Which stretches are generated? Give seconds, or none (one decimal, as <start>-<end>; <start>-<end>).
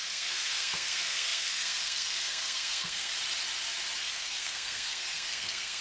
0.0-3.1; 4.0-5.8